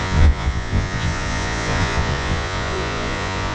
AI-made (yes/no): yes